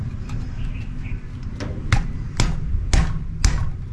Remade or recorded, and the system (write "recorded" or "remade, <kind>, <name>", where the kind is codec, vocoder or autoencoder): recorded